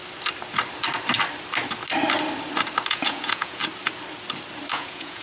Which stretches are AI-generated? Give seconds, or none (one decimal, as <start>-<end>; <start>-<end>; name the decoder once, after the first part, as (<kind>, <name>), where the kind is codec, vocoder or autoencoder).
2.9-3.6 (vocoder, Vocos); 4.7-5.2